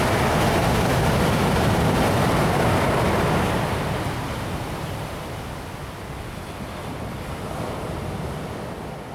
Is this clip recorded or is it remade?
recorded